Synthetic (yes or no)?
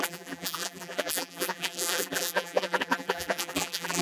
yes